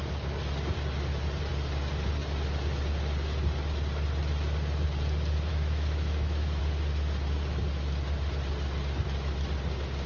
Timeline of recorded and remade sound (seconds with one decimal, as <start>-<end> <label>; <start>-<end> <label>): 0.0-5.5 recorded; 5.5-6.6 remade; 6.6-10.1 recorded